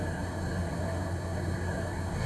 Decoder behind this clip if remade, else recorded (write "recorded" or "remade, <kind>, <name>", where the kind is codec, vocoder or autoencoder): remade, codec, SNAC